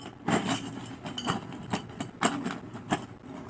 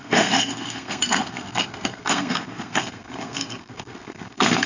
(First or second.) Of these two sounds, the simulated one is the second